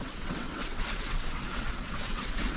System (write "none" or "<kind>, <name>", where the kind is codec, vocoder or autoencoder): vocoder, WaveNeXt